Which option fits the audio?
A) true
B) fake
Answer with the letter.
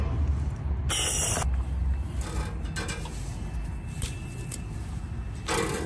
A